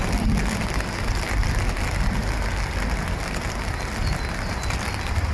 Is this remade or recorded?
recorded